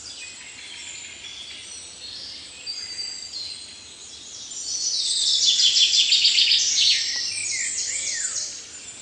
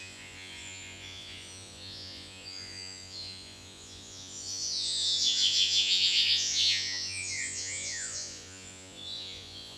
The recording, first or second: first